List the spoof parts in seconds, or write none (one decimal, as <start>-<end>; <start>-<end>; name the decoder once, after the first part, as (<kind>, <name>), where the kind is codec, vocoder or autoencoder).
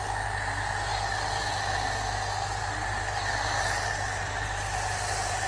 none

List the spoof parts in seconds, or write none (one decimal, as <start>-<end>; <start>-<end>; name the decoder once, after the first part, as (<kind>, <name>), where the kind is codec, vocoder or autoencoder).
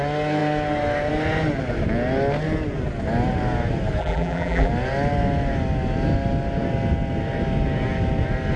4.0-4.7 (vocoder, BigVGAN v2)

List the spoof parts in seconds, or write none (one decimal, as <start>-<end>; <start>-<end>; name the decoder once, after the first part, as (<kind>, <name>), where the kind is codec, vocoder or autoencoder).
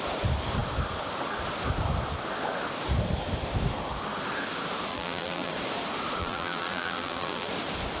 4.9-5.5 (vocoder, BigVGAN v2); 6.2-7.5